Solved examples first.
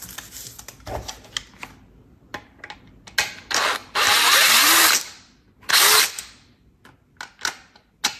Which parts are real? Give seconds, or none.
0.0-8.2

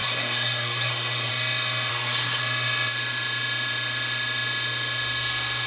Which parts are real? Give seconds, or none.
1.3-1.9; 2.4-5.7

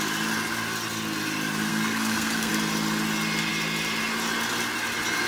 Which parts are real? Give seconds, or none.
0.0-1.7; 2.5-5.3